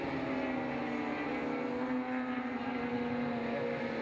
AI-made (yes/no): no